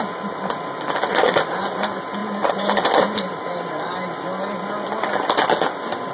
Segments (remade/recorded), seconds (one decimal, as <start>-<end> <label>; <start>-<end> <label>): 0.0-2.2 recorded; 2.2-3.3 remade; 3.3-6.1 recorded